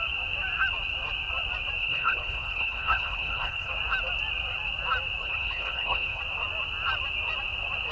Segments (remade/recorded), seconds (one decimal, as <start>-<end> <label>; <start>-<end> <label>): 0.0-1.8 recorded; 1.8-3.7 remade; 3.7-5.2 recorded; 5.2-6.2 remade; 6.2-7.9 recorded